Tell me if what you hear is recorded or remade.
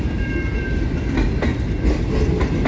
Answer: recorded